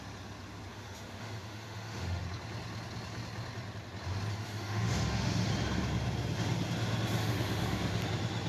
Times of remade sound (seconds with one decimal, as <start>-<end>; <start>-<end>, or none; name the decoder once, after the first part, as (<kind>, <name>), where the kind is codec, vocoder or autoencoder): 0.7-2.2 (autoencoder, DAC-VAE); 4.3-5.5; 7.2-8.0